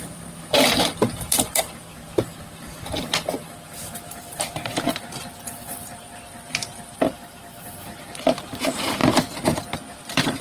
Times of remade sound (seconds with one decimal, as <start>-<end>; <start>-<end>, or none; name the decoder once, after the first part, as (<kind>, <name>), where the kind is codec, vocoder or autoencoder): 0.0-9.0 (vocoder, BigVGAN v2); 10.0-10.4